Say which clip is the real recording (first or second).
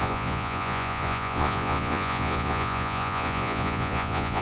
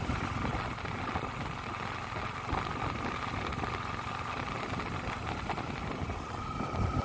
second